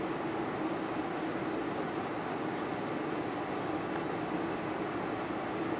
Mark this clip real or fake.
real